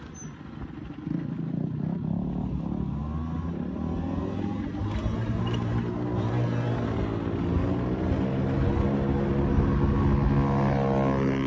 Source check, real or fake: real